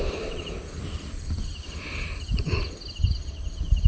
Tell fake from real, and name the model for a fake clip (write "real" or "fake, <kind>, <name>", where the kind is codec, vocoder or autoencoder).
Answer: real